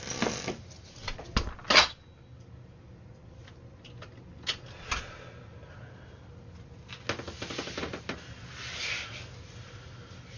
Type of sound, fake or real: real